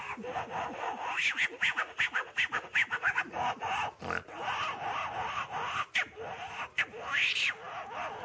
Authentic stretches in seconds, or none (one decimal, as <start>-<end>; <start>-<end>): 0.0-8.2